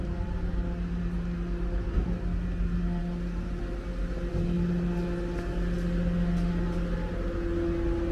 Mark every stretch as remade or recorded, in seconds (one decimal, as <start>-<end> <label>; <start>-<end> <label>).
0.0-8.1 recorded